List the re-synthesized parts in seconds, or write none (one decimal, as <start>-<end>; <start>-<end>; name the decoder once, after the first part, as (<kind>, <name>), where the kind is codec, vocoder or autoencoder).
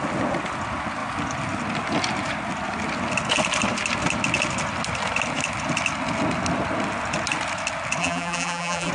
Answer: 8.0-8.9 (vocoder, BigVGAN v2)